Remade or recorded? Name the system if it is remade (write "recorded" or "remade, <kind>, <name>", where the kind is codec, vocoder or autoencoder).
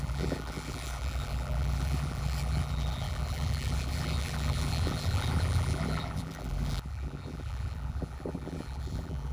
remade, vocoder, BigVGAN v2